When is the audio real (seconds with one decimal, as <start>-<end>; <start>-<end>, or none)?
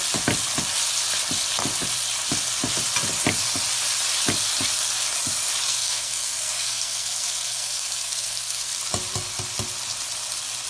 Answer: 0.0-5.7; 8.8-10.7